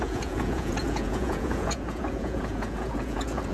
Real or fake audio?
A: fake